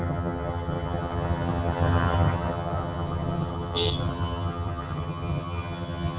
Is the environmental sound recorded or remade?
remade